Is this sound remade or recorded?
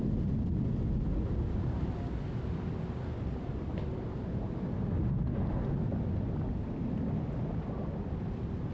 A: recorded